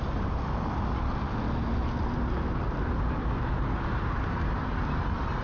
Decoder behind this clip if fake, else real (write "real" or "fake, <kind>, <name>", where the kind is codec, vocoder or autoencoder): real